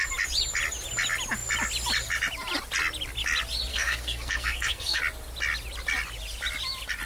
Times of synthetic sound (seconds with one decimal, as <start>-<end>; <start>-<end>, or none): 3.7-5.0

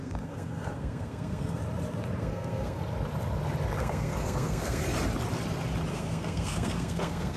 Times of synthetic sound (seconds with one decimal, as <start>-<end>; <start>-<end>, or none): 0.0-1.6; 2.2-2.8; 3.8-4.8; 5.9-7.4

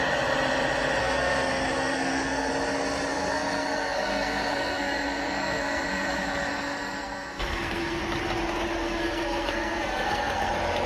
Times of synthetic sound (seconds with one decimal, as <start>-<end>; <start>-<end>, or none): 1.0-2.5; 3.1-8.0; 8.8-10.5

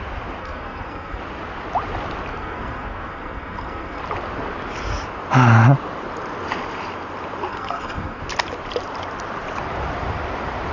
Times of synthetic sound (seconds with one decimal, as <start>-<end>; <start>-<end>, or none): 0.4-1.2; 2.3-4.0; 7.5-8.2

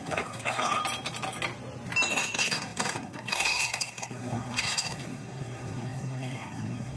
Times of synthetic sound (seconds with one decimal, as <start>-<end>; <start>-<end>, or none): 0.0-0.8; 2.1-7.0

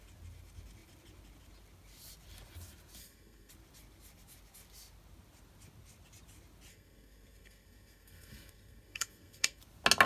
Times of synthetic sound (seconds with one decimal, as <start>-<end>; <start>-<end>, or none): 3.0-3.5; 6.7-9.6